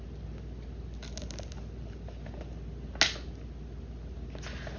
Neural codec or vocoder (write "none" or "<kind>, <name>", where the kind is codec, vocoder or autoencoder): none